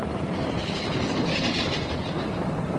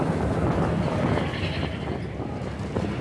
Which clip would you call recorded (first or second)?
second